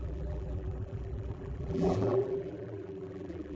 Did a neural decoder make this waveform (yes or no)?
yes